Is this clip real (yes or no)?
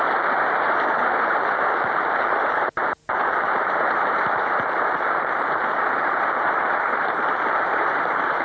no